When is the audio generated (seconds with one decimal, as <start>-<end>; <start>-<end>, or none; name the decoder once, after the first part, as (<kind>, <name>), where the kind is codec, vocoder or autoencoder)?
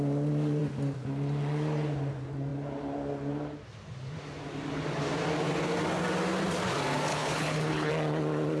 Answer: 7.1-7.9 (codec, HILCodec)